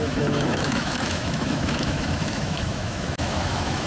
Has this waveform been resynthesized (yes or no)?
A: yes